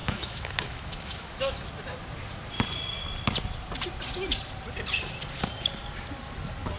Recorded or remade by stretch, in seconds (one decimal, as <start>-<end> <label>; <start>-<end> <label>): 0.0-1.6 remade; 1.6-6.8 recorded